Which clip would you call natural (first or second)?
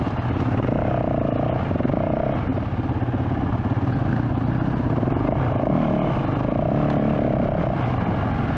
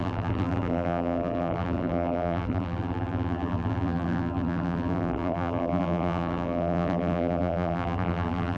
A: first